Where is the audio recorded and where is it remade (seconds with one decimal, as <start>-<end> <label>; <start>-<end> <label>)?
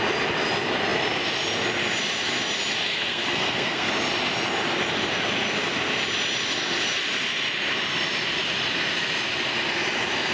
0.0-2.9 recorded; 2.9-3.9 remade; 3.9-10.3 recorded